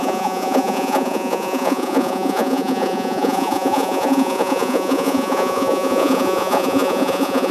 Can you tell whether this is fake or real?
fake